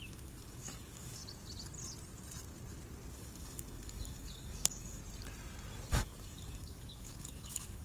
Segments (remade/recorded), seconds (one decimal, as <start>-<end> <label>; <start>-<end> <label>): 0.0-1.2 remade; 1.2-3.1 recorded; 3.1-5.0 remade; 5.0-5.9 recorded; 5.9-7.8 remade